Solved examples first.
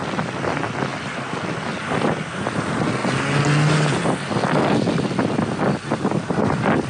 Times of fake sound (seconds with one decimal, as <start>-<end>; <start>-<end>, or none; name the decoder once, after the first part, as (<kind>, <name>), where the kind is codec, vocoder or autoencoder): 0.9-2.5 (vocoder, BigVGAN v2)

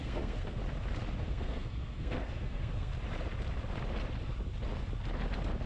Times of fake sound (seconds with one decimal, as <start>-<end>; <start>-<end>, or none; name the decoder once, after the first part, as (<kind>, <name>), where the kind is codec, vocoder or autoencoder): 0.0-0.6 (codec, SNAC); 1.2-2.9

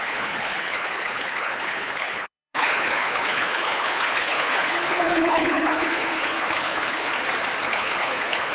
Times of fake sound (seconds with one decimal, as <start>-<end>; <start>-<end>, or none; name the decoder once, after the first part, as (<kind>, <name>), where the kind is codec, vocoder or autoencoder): 0.0-7.1 (codec, HILCodec); 7.6-8.5

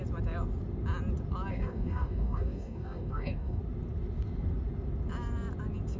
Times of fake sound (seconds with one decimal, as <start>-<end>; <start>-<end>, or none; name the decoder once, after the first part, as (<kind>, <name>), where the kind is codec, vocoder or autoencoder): 1.5-3.6 (codec, DAC)